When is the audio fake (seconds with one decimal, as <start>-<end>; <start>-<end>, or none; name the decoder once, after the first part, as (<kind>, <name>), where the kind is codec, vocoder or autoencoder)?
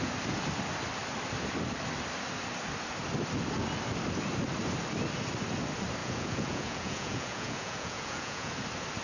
6.0-8.5 (vocoder, Vocos)